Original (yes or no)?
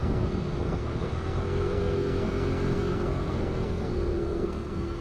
no